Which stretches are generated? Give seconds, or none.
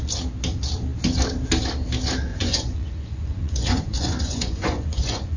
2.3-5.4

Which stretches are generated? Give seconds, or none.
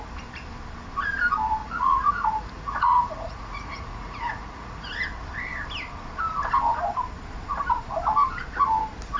1.6-4.9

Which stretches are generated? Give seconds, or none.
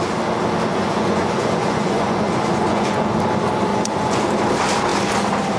0.7-3.1; 3.7-4.2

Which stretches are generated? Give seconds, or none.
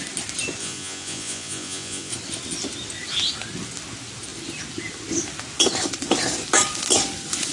0.6-2.1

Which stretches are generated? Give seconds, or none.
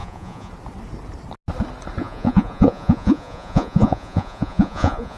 0.0-0.5; 2.0-5.2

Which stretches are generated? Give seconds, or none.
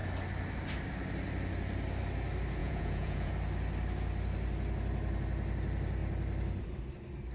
2.6-3.3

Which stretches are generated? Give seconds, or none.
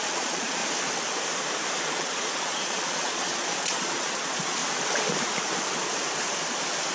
0.0-0.6; 1.8-4.6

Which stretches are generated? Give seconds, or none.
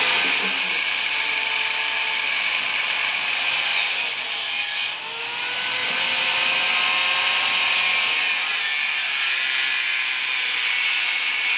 3.7-4.2; 5.8-6.8